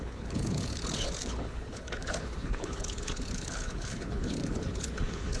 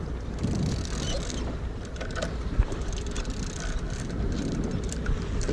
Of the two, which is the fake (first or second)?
first